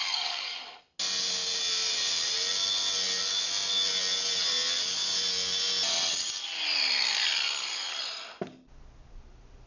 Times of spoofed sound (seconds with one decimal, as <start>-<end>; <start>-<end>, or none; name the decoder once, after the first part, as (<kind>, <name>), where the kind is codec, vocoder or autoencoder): 0.0-0.6 (codec, DAC)